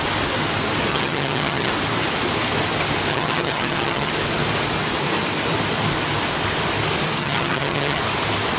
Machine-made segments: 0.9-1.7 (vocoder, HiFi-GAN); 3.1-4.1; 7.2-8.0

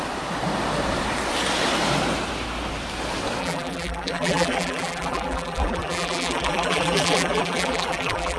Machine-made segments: 3.4-8.4 (vocoder, BigVGAN v2)

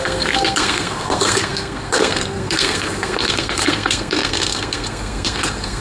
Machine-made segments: 0.0-5.8 (codec, SNAC)

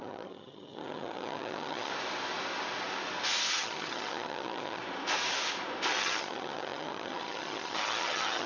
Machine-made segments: 0.0-1.9 (vocoder, HiFi-GAN); 3.5-4.8; 5.9-8.5

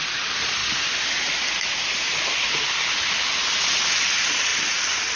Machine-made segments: none

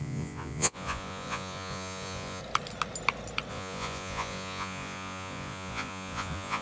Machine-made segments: 0.0-2.4 (vocoder, Vocos); 3.5-6.6

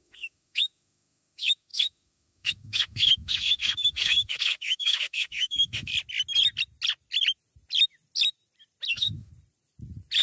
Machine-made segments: 0.0-5.9 (autoencoder, DAC-VAE); 8.9-9.3